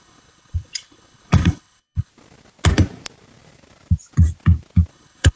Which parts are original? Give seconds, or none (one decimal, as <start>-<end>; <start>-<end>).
2.1-4.9